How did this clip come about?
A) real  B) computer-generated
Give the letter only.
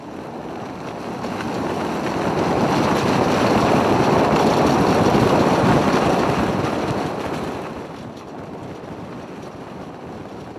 A